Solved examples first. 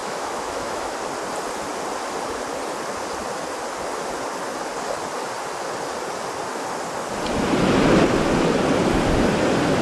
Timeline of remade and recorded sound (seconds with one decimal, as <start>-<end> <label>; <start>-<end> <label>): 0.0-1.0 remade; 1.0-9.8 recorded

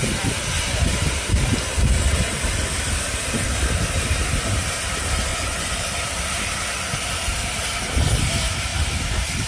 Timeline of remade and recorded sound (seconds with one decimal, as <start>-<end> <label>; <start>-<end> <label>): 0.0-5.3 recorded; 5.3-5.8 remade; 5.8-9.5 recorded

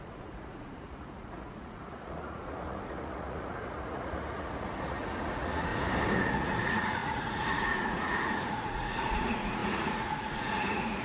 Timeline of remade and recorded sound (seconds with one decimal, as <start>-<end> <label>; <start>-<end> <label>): 0.0-5.7 remade; 5.7-6.3 recorded; 6.3-11.0 remade

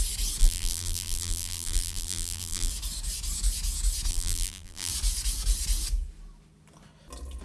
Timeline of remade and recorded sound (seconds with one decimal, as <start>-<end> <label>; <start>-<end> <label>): 0.0-0.4 recorded; 0.4-2.7 remade; 2.7-4.1 recorded; 4.1-4.9 remade; 4.9-7.4 recorded

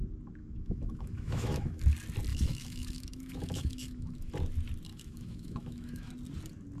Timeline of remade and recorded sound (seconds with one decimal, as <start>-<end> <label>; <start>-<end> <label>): 0.0-0.4 recorded; 0.4-1.8 remade; 1.8-2.3 recorded; 2.3-4.3 remade; 4.3-4.9 recorded; 4.9-6.1 remade; 6.1-6.8 recorded